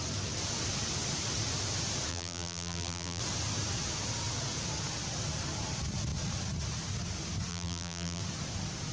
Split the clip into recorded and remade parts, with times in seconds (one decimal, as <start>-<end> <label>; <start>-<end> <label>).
0.0-2.1 recorded; 2.1-3.2 remade; 3.2-7.5 recorded; 7.5-8.2 remade; 8.2-8.9 recorded